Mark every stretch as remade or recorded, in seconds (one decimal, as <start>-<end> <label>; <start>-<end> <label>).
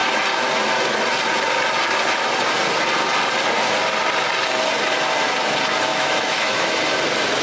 0.0-5.9 recorded; 5.9-6.7 remade; 6.7-7.4 recorded